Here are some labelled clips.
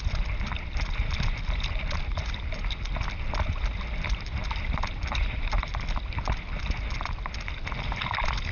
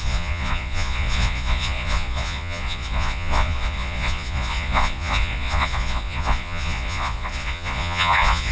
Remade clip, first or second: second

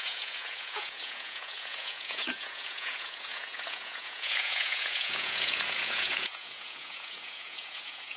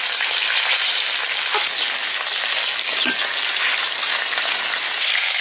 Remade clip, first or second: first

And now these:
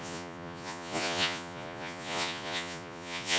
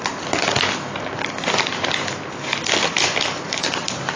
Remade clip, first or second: first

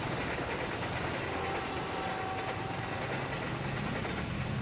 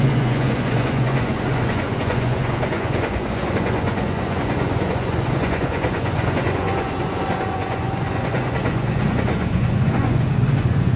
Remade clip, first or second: second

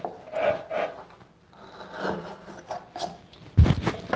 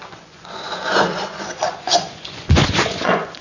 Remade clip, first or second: second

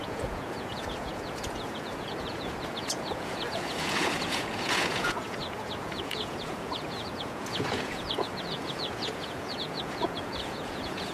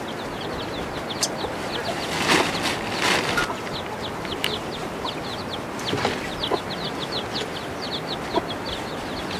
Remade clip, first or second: first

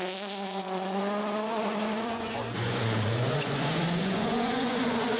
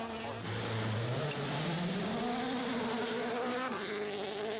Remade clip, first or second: first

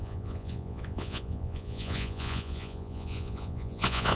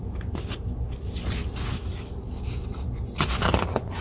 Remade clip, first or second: first